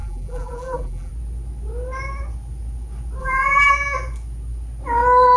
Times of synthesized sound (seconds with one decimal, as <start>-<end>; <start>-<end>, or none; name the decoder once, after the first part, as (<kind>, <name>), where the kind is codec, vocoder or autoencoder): 0.0-1.1 (vocoder, BigVGAN v2); 3.2-3.7